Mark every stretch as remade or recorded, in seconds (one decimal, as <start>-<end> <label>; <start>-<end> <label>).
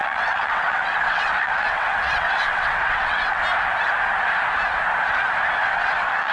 0.0-3.4 remade; 3.4-5.6 recorded; 5.6-6.3 remade